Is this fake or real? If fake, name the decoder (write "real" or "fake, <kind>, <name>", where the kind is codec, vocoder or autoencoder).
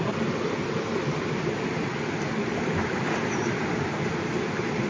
fake, vocoder, BigVGAN v2